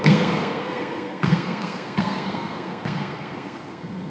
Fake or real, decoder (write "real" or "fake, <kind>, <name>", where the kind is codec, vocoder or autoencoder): fake, codec, SNAC